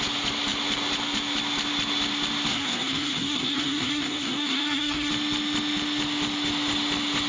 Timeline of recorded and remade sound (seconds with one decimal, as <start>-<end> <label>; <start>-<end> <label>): 0.0-2.5 recorded; 2.5-5.1 remade; 5.1-7.3 recorded